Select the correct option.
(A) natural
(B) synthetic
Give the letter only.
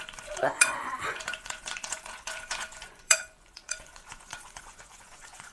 B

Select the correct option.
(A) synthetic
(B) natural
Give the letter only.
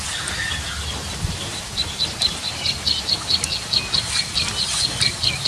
B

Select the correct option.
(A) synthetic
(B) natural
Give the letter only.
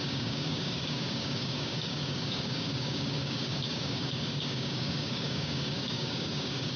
A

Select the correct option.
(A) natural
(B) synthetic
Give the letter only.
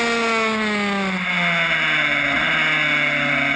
A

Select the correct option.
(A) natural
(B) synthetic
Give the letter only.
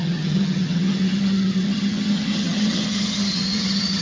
B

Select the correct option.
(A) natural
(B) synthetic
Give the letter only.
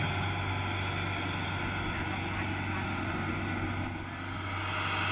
A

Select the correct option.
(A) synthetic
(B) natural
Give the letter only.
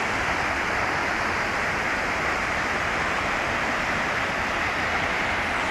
B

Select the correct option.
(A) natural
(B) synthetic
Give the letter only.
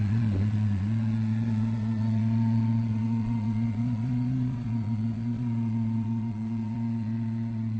B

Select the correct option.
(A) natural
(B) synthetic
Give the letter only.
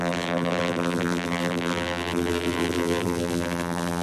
B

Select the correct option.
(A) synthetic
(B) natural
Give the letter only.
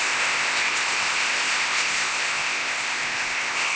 A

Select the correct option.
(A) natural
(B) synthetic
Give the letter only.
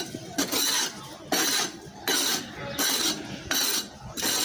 A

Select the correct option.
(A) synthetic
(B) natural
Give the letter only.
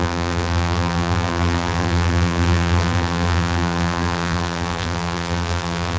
A